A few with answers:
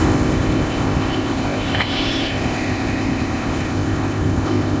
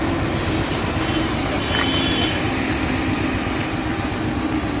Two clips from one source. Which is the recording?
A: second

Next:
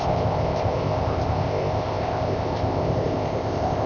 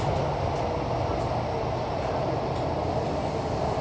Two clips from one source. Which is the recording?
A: second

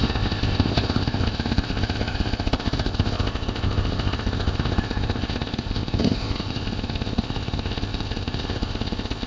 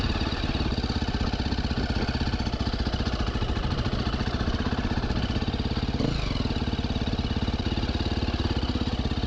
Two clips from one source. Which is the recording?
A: second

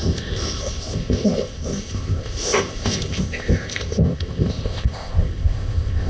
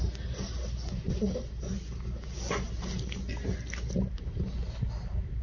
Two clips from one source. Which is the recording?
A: second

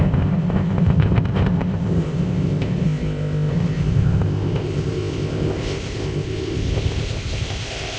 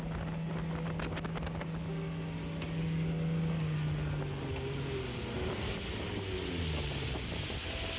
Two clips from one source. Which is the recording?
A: second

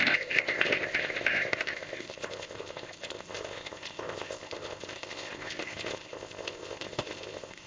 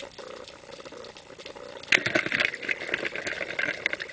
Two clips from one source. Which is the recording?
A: second